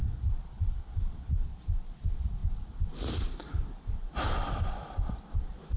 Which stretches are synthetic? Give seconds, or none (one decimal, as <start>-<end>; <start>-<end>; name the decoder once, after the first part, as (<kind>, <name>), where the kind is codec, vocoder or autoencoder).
none